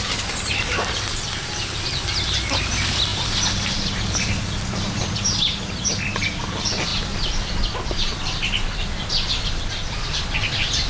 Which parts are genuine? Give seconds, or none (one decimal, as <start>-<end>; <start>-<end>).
0.0-3.1; 5.0-10.9